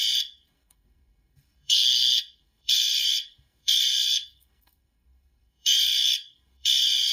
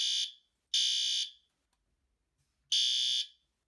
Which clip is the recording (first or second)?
second